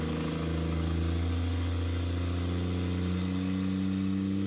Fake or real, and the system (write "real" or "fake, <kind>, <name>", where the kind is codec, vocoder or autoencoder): real